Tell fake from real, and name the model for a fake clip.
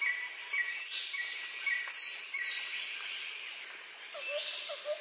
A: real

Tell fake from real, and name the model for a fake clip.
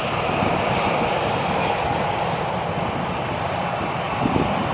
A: real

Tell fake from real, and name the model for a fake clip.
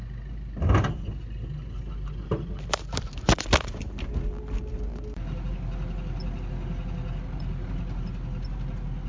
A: real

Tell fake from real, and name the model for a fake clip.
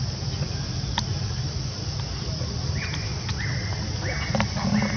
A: real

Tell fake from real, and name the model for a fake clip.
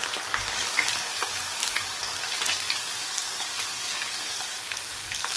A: fake, codec, DAC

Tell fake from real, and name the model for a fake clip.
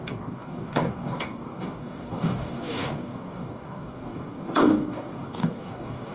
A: fake, codec, DAC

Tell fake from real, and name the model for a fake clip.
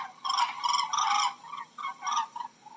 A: real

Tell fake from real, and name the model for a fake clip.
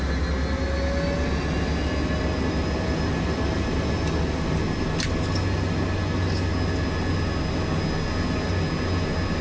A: real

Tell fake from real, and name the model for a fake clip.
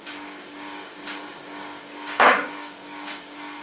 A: fake, codec, DAC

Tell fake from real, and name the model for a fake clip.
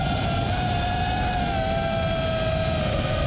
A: real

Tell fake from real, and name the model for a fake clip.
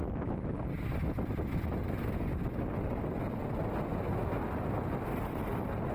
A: real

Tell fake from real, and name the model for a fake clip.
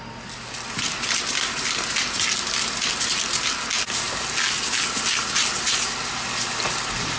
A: real